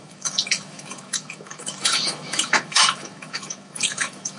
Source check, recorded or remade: remade